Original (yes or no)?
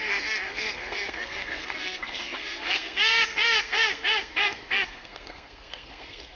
no